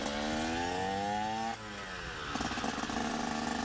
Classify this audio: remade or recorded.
recorded